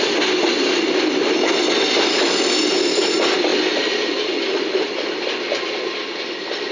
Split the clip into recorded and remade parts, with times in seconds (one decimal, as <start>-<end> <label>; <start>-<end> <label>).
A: 0.0-6.7 recorded